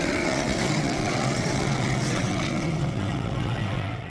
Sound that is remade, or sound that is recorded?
remade